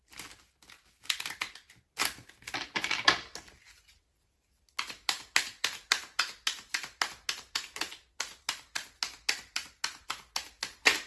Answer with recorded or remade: recorded